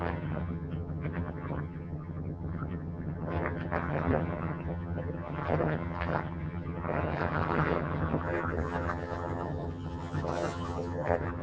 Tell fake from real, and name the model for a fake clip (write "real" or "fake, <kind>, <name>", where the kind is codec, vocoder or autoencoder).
fake, vocoder, HiFi-GAN